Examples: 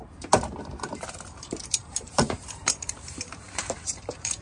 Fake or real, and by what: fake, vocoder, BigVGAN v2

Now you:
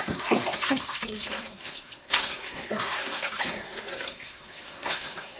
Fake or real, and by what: fake, codec, SNAC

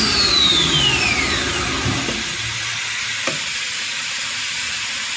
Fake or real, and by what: real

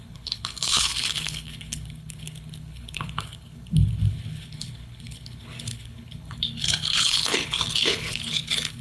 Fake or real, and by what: fake, codec, HILCodec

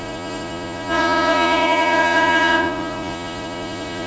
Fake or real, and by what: fake, vocoder, Vocos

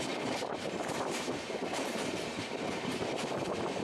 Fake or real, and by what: fake, vocoder, BigVGAN v2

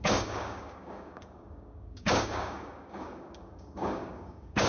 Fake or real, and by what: fake, codec, DAC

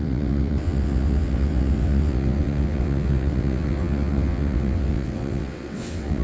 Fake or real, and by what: fake, vocoder, WaveNeXt